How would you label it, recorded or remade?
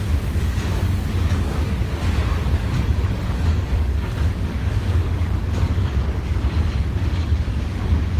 remade